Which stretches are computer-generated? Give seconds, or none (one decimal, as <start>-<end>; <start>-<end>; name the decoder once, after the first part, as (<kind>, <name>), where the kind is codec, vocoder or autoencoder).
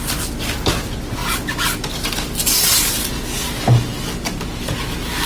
none